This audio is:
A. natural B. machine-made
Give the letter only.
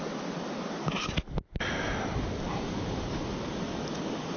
A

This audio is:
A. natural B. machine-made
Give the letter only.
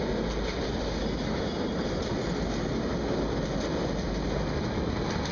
A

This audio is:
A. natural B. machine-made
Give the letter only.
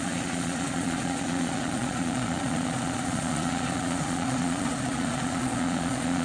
B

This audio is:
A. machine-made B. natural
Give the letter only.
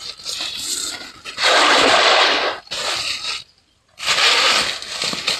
B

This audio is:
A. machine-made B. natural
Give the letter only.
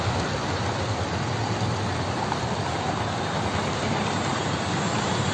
B